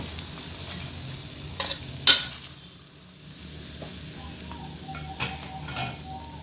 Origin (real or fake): real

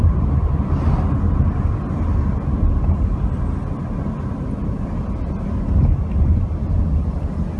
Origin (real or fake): real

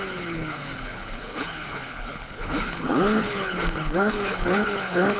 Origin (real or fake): fake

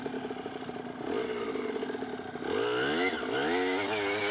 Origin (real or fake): real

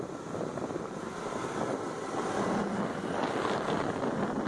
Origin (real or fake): real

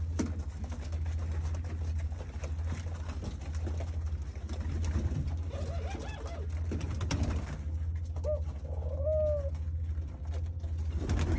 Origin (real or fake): real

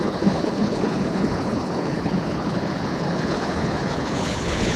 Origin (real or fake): fake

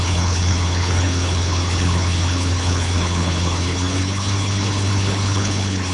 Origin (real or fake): fake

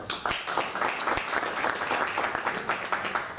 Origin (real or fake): real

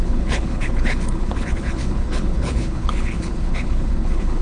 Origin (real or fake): fake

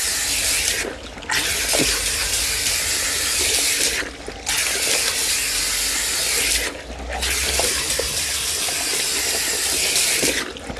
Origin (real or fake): real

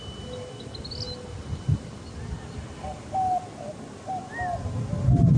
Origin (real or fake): real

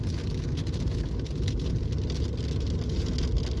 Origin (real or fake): real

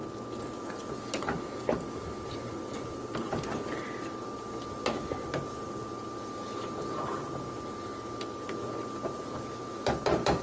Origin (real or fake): real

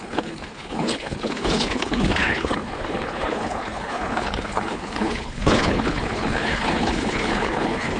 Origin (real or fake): fake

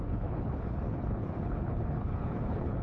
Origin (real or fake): fake